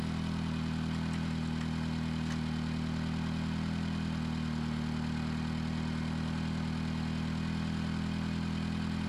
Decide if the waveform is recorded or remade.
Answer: recorded